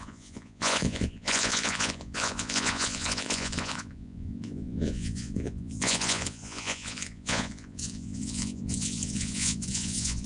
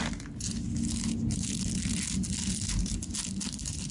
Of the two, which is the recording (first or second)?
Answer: second